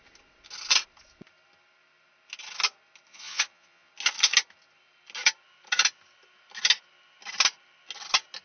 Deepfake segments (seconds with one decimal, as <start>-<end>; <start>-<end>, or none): 3.1-3.9